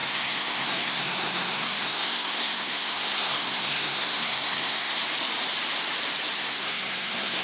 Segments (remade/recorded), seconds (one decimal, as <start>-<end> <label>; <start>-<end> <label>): 0.0-5.0 remade; 5.0-6.4 recorded; 6.4-7.4 remade